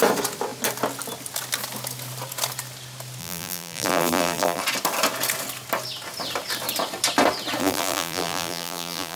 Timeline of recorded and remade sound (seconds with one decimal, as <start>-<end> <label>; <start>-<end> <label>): 0.0-3.2 recorded; 3.2-4.6 remade; 4.6-7.6 recorded; 7.6-9.2 remade

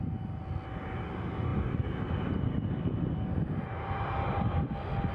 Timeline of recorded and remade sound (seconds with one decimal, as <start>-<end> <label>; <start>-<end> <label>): 0.0-5.1 recorded

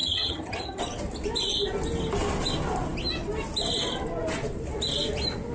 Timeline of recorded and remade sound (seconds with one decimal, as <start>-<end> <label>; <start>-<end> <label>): 0.0-0.8 remade; 0.8-5.5 recorded